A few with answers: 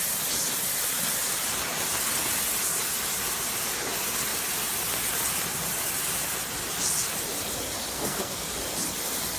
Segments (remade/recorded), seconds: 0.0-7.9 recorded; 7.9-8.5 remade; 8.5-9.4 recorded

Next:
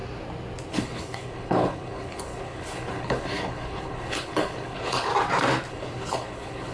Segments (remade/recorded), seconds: 0.0-0.7 recorded; 0.7-5.1 remade; 5.1-5.7 recorded; 5.7-6.7 remade

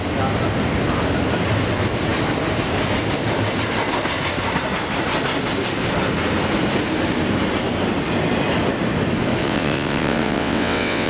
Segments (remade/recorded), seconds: 0.0-9.4 recorded; 9.4-11.1 remade

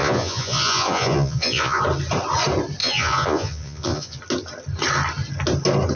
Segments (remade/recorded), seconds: 0.0-1.8 remade; 1.8-2.8 recorded; 2.8-4.2 remade; 4.2-6.0 recorded

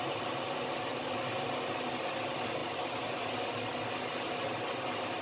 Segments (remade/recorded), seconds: 0.0-5.2 recorded

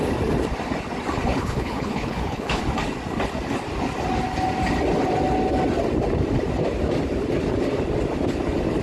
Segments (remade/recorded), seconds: 0.0-1.3 recorded; 1.3-2.6 remade; 2.6-8.8 recorded

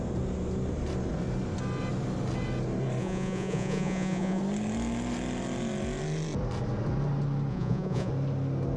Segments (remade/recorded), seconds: 0.0-3.0 recorded; 3.0-4.4 remade; 4.4-7.5 recorded; 7.5-8.1 remade; 8.1-8.8 recorded

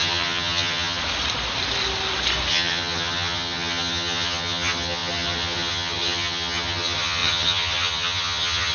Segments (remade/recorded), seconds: 0.0-1.0 remade; 1.0-2.5 recorded; 2.5-8.7 remade